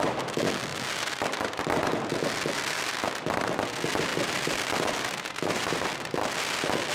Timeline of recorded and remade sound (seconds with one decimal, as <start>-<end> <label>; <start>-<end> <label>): 0.0-0.7 recorded; 0.7-1.6 remade; 1.6-4.1 recorded; 4.1-6.3 remade; 6.3-6.9 recorded